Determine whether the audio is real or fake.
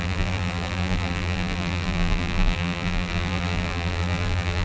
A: fake